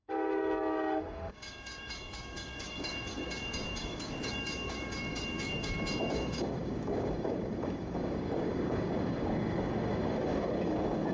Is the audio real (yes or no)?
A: no